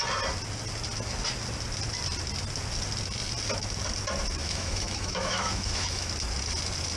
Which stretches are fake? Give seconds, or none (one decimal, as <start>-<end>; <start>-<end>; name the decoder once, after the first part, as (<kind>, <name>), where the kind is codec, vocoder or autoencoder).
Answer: 4.4-6.1 (autoencoder, DAC-VAE)